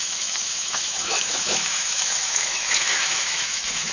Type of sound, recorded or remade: remade